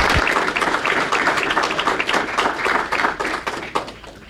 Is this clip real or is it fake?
fake